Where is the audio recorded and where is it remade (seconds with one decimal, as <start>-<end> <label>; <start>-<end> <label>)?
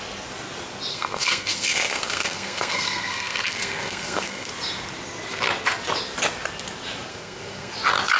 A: 0.0-0.9 recorded; 0.9-4.5 remade; 4.5-7.1 recorded; 7.1-7.7 remade; 7.7-8.2 recorded